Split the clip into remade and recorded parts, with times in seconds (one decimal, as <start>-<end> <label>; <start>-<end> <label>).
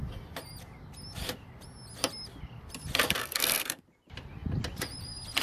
0.0-3.2 recorded; 3.2-3.8 remade; 3.8-5.4 recorded